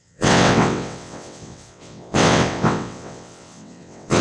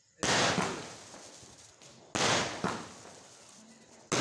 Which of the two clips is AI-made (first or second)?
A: first